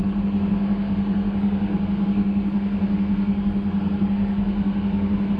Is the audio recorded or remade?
remade